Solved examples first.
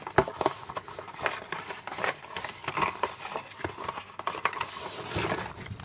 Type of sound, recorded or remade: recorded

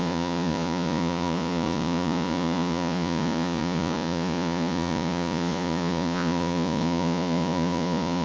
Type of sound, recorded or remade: remade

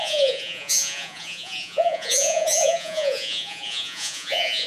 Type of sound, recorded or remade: remade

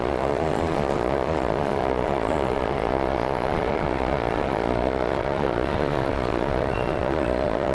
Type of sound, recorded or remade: remade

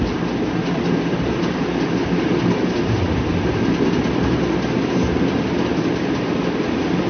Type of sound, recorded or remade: recorded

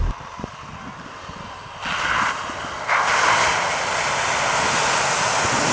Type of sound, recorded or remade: recorded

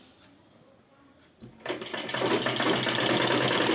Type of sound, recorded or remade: recorded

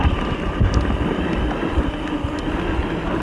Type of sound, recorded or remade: recorded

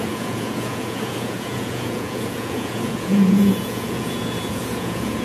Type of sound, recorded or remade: remade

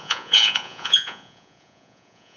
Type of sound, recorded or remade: remade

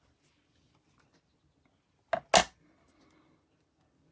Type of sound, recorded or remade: recorded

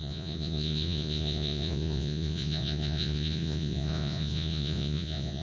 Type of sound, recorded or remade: remade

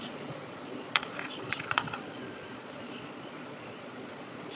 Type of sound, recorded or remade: remade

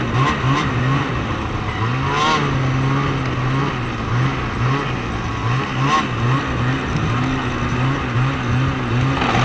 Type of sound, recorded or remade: recorded